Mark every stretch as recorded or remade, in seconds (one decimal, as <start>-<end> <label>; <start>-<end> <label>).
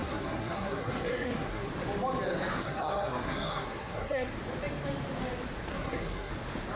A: 0.0-1.7 remade; 1.7-2.6 recorded; 2.6-4.3 remade; 4.3-5.7 recorded; 5.7-6.3 remade; 6.3-6.8 recorded